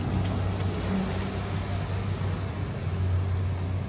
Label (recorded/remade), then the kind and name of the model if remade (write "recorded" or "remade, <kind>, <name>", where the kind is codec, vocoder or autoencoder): recorded